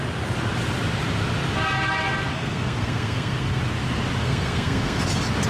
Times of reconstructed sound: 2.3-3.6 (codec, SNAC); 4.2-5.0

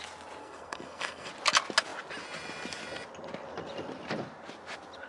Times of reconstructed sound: 0.4-1.3 (codec, SNAC)